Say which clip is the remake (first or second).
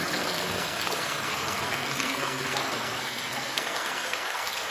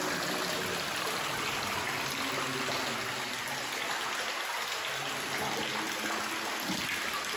first